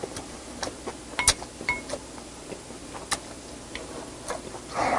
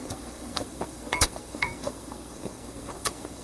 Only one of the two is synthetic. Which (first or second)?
second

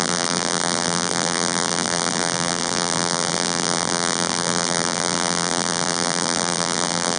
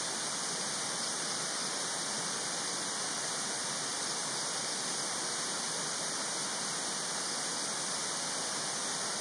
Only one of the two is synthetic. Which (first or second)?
first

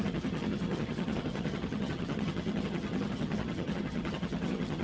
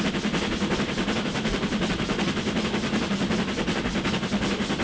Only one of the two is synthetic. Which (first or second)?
first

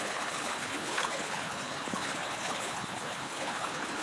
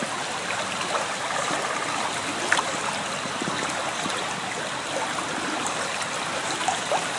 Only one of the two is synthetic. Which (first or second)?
first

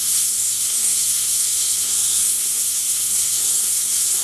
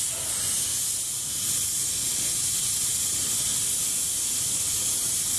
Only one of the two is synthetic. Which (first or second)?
first